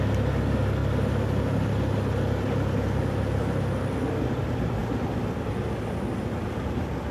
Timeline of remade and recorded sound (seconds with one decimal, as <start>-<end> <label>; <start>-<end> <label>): 0.0-7.1 recorded